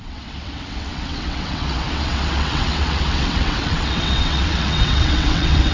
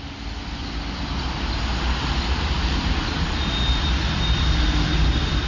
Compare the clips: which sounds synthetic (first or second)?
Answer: first